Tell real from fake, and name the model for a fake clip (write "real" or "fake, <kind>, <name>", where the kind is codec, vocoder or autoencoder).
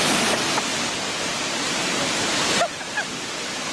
fake, vocoder, BigVGAN v2